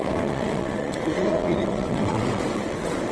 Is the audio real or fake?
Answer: fake